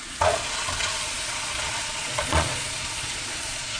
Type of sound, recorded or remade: remade